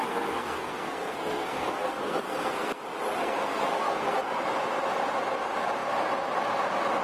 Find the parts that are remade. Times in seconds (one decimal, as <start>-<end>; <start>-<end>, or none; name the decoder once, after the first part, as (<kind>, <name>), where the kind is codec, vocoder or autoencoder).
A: 0.0-2.8 (codec, SNAC); 3.2-4.4